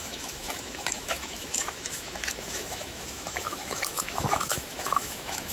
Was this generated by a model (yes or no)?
yes